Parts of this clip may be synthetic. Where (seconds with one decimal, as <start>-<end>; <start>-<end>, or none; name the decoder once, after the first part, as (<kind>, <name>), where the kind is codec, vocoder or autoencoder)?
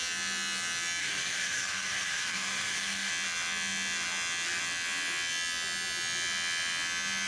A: 1.0-3.1 (codec, SNAC)